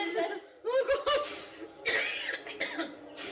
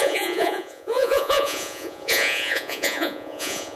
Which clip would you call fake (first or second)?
second